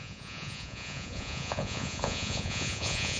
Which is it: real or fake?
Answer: fake